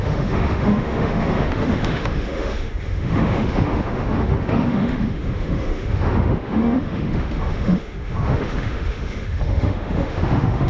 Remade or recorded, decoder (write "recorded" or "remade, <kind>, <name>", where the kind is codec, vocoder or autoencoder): remade, autoencoder, DAC-VAE